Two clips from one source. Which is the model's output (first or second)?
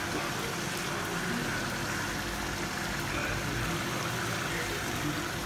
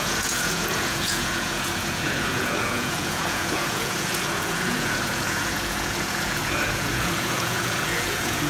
second